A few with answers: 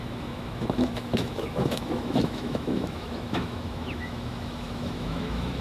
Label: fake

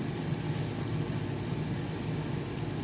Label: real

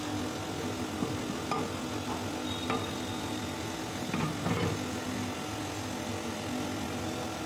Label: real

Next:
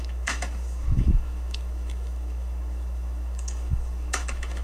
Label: fake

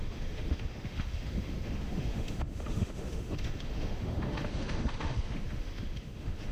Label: fake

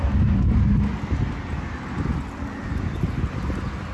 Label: real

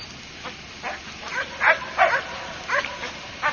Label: real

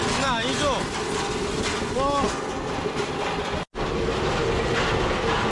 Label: real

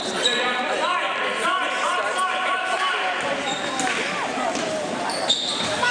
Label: real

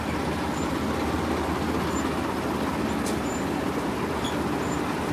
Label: real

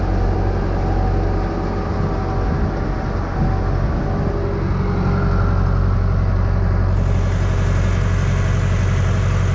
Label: real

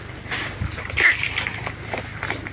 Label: real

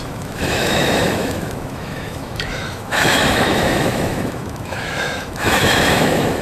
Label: fake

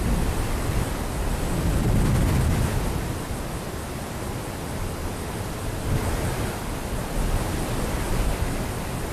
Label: real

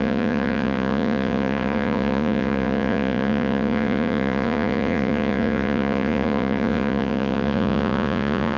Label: fake